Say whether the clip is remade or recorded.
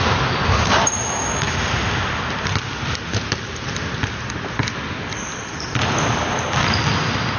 recorded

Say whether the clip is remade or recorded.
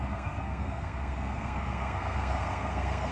remade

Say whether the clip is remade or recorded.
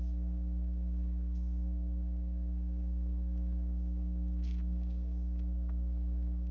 remade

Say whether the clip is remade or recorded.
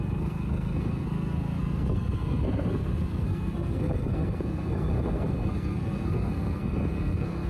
remade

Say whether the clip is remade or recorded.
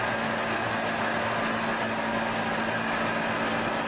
recorded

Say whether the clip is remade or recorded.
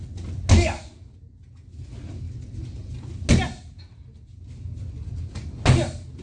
recorded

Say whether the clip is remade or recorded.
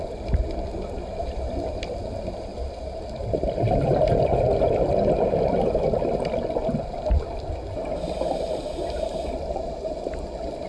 recorded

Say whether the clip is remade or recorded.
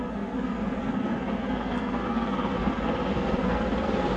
remade